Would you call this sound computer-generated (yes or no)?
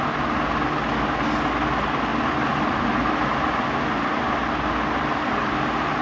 no